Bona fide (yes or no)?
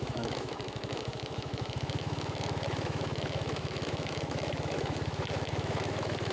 no